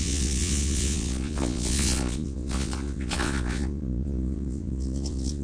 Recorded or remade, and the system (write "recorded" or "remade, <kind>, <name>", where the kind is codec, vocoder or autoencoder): remade, vocoder, Vocos